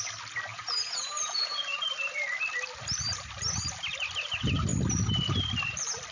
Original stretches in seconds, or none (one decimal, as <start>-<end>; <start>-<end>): 0.0-0.5; 1.8-6.1